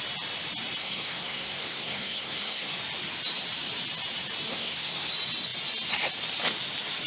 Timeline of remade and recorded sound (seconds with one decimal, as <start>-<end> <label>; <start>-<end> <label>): 0.0-0.8 recorded; 0.8-2.8 remade; 2.8-4.5 recorded; 4.5-5.1 remade; 5.1-7.1 recorded